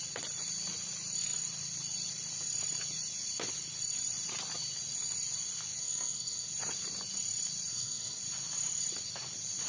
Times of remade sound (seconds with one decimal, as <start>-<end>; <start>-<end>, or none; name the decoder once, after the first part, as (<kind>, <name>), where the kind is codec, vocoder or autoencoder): 5.8-6.5 (codec, SNAC); 7.7-8.2